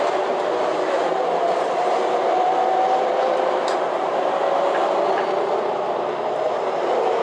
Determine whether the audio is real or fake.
fake